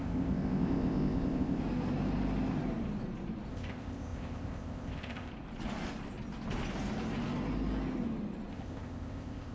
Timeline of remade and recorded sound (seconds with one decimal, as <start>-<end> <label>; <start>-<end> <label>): 0.0-1.6 remade; 1.6-3.5 recorded; 3.5-5.3 remade; 5.3-8.5 recorded; 8.5-9.5 remade